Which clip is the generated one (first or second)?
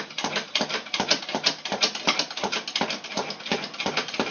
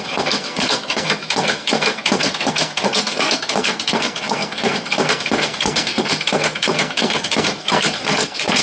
second